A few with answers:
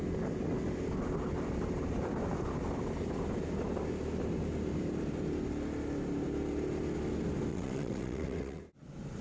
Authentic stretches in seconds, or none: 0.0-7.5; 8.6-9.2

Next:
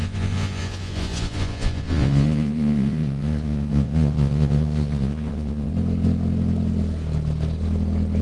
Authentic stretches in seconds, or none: 5.7-8.2

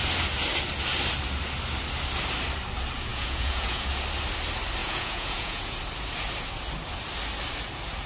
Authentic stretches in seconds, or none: 0.0-3.1; 3.9-4.8; 5.8-8.1

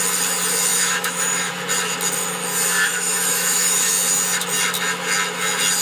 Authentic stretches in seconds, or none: 0.0-0.7; 1.5-2.9; 3.9-5.8

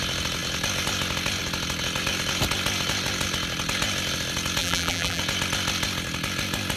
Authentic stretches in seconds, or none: 0.0-4.6; 5.2-6.8

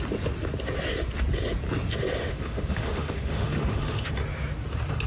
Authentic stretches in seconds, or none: 0.0-2.2; 4.1-5.1

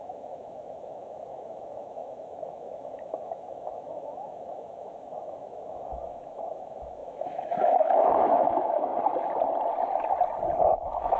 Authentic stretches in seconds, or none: 8.9-10.6

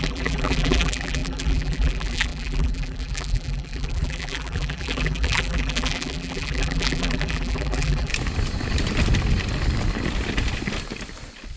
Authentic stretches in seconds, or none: 8.1-11.6